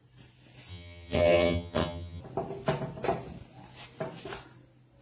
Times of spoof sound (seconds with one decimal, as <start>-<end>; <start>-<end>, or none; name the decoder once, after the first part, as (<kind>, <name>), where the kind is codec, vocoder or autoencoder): 0.7-2.2 (vocoder, HiFi-GAN)